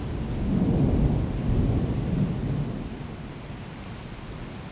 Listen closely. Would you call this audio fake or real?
real